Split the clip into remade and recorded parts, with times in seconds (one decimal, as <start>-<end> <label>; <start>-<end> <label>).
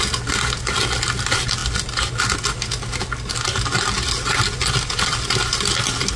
0.0-6.2 recorded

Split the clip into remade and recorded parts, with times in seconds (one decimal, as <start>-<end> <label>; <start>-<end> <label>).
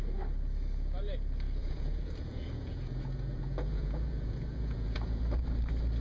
0.0-1.6 recorded; 1.6-5.2 remade; 5.2-6.0 recorded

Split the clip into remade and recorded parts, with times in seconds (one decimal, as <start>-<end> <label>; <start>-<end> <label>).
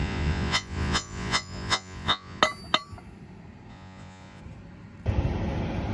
0.0-2.4 remade; 2.4-3.7 recorded; 3.7-4.4 remade; 4.4-5.9 recorded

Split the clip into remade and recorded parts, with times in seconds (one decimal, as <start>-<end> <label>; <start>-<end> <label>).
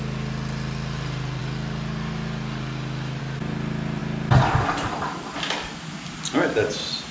0.0-7.1 recorded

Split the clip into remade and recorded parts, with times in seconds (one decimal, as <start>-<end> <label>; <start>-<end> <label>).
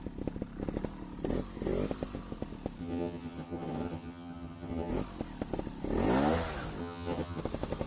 0.0-2.8 recorded; 2.8-4.9 remade; 4.9-6.8 recorded; 6.8-7.4 remade; 7.4-7.9 recorded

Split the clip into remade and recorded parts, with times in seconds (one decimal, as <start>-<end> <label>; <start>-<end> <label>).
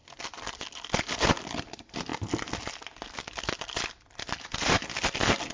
0.0-5.5 recorded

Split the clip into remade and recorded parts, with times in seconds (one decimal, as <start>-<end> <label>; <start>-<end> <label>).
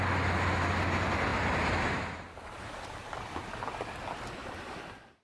0.0-1.3 recorded; 1.3-2.6 remade; 2.6-4.4 recorded; 4.4-5.2 remade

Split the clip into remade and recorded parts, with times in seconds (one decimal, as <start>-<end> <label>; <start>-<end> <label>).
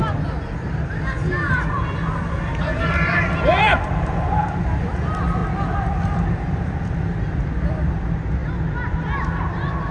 0.0-2.7 recorded; 2.7-4.6 remade; 4.6-9.9 recorded